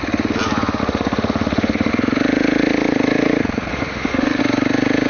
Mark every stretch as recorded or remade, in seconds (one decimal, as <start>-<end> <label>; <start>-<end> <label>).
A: 0.0-0.8 recorded; 0.8-1.9 remade; 1.9-3.7 recorded; 3.7-4.4 remade; 4.4-5.1 recorded